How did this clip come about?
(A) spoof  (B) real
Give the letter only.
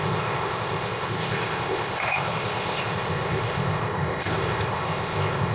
A